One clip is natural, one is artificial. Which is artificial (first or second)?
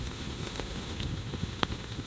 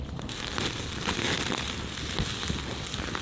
first